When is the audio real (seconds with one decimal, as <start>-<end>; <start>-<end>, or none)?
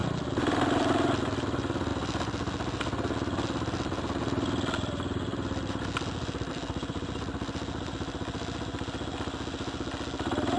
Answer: 0.0-10.6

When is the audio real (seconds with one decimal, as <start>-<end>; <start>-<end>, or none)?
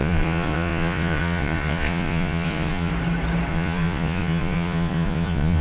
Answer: 2.9-3.5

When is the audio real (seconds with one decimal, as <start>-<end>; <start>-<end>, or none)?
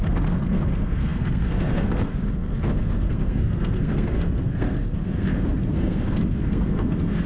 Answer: none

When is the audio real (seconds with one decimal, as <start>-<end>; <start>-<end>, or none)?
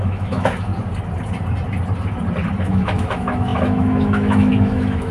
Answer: 0.7-2.6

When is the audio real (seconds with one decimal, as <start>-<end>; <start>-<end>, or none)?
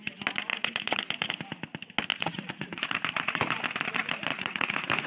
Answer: 0.0-0.5; 1.3-2.1; 3.0-4.3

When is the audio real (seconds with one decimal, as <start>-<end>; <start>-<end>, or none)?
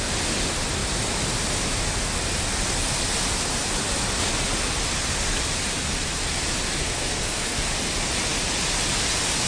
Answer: 0.0-6.8; 7.6-9.5